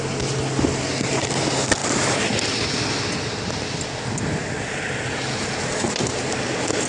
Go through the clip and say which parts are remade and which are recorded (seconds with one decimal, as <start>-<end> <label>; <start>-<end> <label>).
0.0-6.9 recorded